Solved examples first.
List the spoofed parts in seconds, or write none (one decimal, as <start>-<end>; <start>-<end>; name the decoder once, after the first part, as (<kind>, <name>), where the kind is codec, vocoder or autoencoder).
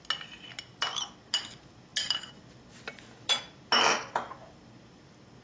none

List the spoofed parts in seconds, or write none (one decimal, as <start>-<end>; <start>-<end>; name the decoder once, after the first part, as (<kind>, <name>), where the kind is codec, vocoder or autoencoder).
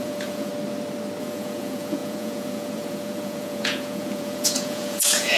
0.0-0.5 (vocoder, Vocos); 1.2-5.4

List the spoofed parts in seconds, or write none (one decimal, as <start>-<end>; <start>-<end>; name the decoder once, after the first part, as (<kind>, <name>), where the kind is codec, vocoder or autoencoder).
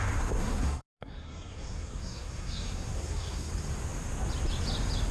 0.4-3.5 (codec, SNAC)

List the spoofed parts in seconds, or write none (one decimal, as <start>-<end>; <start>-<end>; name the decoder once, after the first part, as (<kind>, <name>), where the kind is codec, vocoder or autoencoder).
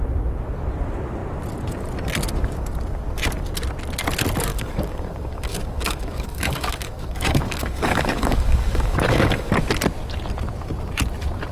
4.5-9.5 (codec, DAC)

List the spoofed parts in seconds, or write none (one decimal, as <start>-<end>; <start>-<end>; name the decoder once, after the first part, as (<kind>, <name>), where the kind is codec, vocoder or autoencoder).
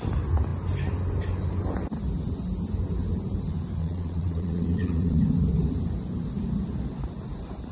3.8-5.2 (vocoder, Vocos)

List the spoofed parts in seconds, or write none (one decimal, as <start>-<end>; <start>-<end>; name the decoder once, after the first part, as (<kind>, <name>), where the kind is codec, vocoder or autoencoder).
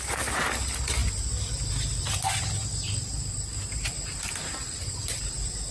none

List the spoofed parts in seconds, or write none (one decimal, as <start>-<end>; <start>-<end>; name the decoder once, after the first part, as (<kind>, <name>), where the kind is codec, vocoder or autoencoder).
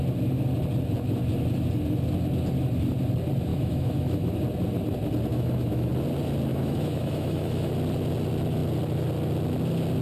3.5-4.3 (autoencoder, DAC-VAE); 5.3-5.9; 6.5-7.7